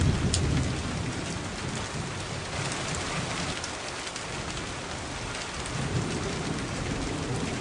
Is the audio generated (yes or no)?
no